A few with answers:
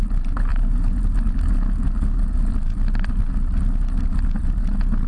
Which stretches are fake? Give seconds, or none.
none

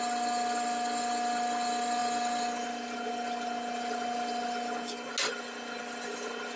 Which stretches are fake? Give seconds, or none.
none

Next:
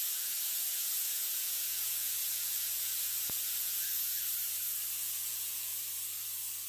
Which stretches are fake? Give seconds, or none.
0.0-4.3 (vocoder, Vocos); 5.0-5.7

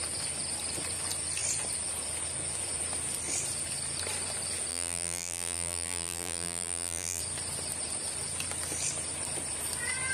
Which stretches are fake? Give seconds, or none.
4.7-7.2 (vocoder, BigVGAN v2)